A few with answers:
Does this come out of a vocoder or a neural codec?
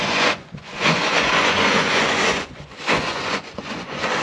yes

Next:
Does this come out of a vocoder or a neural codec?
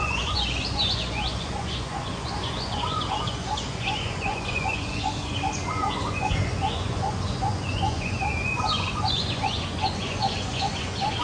yes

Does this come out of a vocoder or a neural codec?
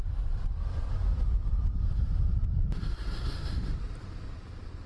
no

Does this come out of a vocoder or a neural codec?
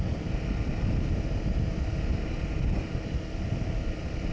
no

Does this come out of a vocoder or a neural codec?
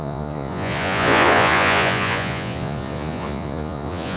yes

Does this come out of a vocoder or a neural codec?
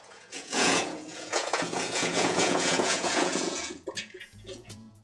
yes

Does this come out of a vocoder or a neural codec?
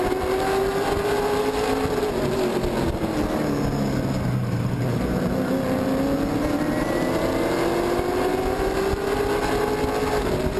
no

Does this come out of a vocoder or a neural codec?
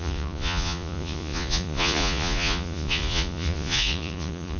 yes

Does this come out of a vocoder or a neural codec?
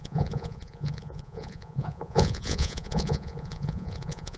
yes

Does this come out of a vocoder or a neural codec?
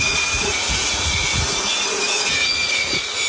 yes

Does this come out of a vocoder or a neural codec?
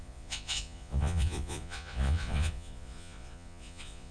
yes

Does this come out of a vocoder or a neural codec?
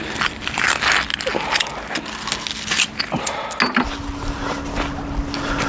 no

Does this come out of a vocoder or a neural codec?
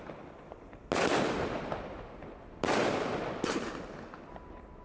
no